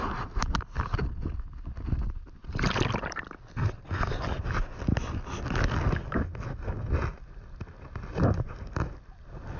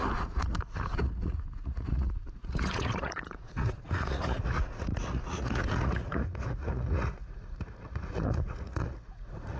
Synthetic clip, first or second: second